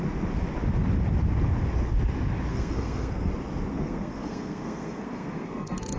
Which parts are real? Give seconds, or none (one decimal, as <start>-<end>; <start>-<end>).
0.0-2.5; 3.3-3.7